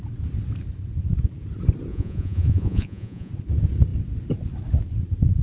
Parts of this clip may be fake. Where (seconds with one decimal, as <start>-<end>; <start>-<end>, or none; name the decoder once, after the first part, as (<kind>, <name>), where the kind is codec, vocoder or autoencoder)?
1.9-3.3 (vocoder, Vocos)